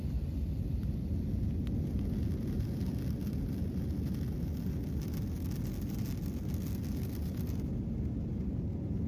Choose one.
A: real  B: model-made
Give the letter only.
A